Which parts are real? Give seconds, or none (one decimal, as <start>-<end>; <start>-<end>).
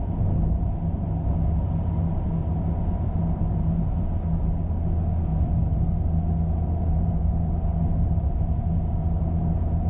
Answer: 0.0-9.9